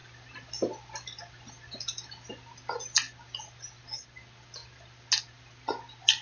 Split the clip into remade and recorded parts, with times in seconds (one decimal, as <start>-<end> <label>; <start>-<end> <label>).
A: 0.0-6.2 recorded